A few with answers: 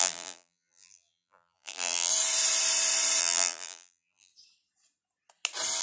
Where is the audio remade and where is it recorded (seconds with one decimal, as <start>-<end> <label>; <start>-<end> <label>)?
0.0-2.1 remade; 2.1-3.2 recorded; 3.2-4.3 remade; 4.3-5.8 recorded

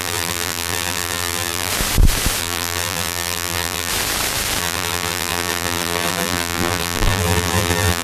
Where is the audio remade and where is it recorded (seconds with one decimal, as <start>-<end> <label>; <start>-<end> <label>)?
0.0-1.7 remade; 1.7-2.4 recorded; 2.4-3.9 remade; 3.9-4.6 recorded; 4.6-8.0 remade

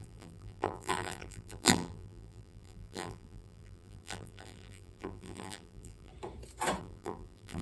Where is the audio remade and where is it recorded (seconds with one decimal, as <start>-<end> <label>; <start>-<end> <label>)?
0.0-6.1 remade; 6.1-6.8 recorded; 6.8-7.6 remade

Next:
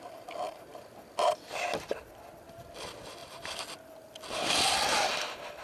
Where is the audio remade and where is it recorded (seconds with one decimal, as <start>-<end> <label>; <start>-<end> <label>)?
0.0-5.6 recorded